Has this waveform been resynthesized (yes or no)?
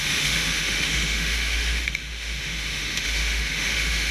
yes